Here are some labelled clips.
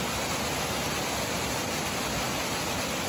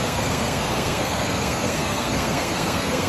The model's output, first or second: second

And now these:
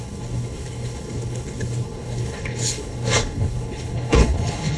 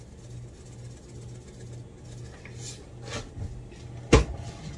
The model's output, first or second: first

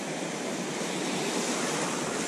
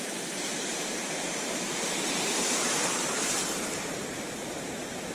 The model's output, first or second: second